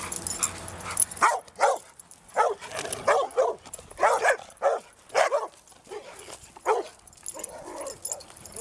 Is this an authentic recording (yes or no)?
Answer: yes